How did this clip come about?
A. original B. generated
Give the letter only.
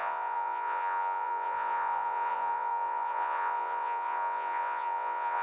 B